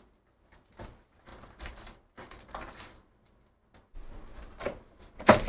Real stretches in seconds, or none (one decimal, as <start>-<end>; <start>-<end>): 0.0-5.5